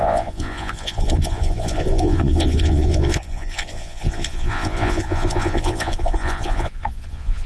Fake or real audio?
fake